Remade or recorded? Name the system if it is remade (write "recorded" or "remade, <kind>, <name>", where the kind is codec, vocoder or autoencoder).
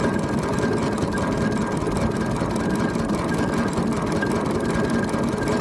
recorded